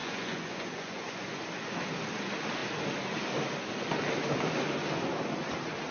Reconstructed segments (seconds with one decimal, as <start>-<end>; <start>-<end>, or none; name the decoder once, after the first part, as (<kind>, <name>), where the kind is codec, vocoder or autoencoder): 0.0-1.4 (vocoder, Vocos)